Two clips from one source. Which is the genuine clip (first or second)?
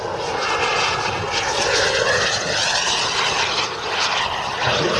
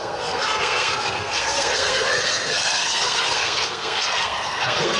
first